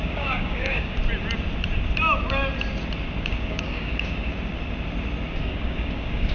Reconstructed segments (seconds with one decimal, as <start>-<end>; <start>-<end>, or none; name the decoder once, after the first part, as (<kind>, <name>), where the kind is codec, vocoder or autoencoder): 0.0-1.0 (codec, DAC); 3.2-4.3; 5.4-6.3